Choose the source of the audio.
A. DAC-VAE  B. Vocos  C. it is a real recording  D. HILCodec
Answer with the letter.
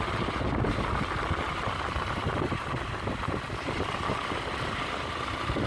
C